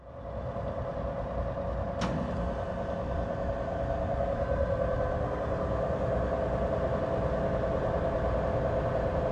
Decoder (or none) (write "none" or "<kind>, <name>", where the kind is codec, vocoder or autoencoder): none